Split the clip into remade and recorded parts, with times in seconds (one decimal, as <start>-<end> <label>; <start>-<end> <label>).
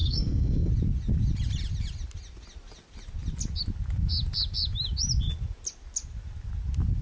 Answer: 0.0-0.7 remade; 0.7-7.0 recorded